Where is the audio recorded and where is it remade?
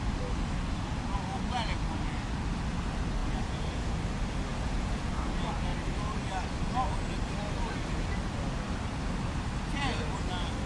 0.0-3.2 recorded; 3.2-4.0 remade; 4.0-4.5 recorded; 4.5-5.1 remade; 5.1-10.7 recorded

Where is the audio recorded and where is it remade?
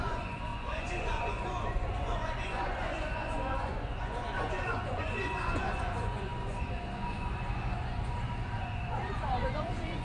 0.0-10.0 remade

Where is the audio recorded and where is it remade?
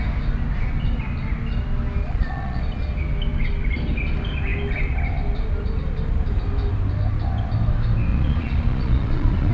0.0-2.0 recorded; 2.0-2.6 remade; 2.6-8.1 recorded; 8.1-9.5 remade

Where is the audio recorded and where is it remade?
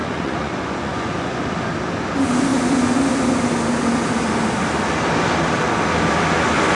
0.0-1.4 remade; 1.4-6.7 recorded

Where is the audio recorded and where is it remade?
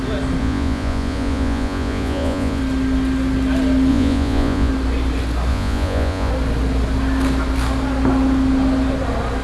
0.0-0.4 recorded; 0.4-2.6 remade; 2.6-3.9 recorded; 3.9-4.7 remade; 4.7-5.5 recorded; 5.5-6.3 remade; 6.3-9.4 recorded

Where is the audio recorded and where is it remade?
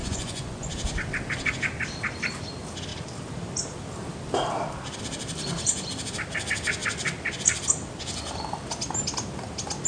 0.0-0.7 remade; 0.7-9.9 recorded